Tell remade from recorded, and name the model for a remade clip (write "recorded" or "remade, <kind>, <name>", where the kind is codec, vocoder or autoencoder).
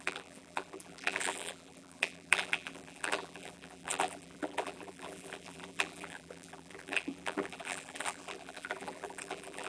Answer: remade, vocoder, BigVGAN v2